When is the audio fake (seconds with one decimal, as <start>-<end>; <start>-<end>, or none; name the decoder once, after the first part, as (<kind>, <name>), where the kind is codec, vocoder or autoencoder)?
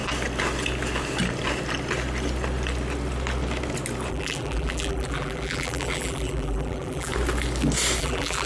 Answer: 4.1-7.1 (vocoder, BigVGAN v2); 8.0-8.5